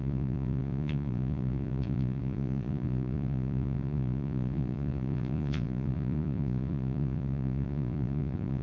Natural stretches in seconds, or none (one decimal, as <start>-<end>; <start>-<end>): none